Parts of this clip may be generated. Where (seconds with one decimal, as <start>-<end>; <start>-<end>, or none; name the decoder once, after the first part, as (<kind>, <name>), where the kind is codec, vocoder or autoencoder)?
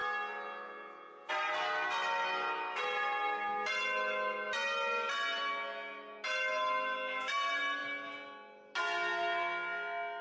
none